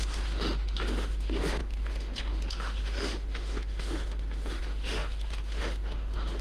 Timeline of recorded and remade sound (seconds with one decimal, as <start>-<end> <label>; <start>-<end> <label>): 0.0-6.4 remade